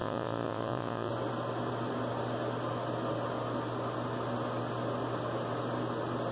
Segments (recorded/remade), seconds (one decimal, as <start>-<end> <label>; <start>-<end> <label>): 0.0-1.1 remade; 1.1-6.3 recorded